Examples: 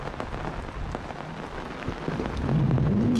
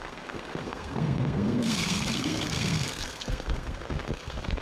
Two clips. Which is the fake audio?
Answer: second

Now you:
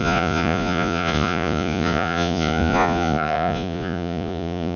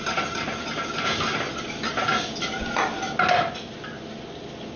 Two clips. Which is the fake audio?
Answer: first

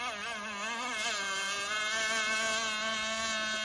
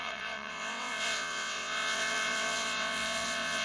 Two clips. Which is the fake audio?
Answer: second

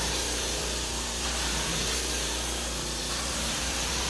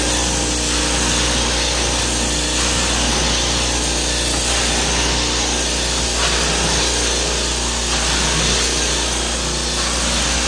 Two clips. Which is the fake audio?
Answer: first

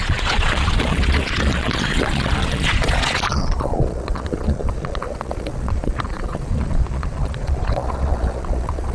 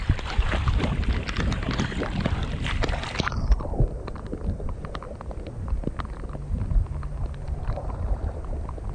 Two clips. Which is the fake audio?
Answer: first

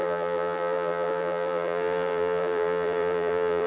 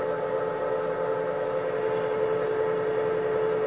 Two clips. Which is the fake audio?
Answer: first